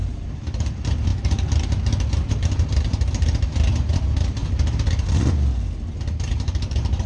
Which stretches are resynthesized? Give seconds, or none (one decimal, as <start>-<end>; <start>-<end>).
0.0-1.1; 2.3-4.4; 6.0-7.1

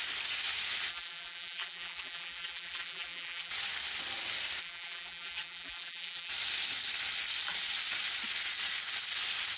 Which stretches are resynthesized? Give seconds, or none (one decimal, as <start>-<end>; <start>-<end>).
0.9-3.5; 4.6-6.3

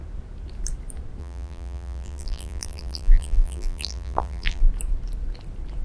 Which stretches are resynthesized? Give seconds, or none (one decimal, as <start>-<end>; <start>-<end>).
1.2-4.6